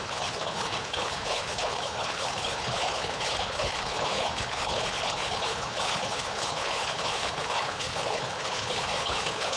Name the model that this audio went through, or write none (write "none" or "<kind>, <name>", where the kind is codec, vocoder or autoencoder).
codec, HILCodec